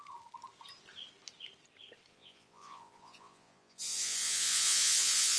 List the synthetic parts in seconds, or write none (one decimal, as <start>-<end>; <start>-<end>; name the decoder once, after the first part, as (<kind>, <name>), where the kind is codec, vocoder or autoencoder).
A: 2.1-5.4 (vocoder, Vocos)